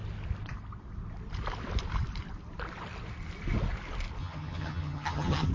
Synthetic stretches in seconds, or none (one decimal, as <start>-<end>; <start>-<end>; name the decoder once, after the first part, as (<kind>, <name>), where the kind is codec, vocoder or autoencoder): 4.2-5.5 (vocoder, HiFi-GAN)